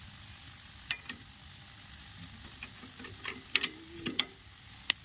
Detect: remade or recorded recorded